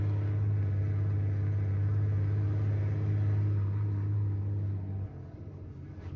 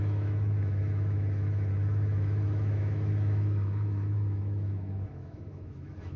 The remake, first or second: second